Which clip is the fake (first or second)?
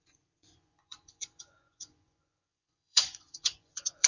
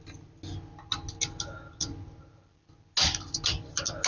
first